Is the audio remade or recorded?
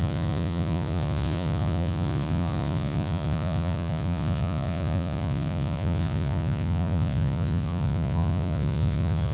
remade